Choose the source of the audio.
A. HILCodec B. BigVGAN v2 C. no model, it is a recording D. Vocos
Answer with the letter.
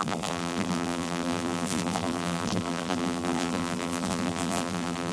B